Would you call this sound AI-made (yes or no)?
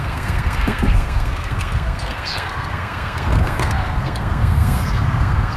yes